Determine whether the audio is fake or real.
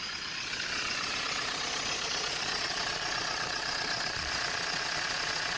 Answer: fake